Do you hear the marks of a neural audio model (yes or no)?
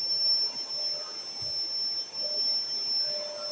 no